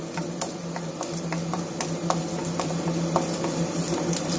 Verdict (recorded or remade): recorded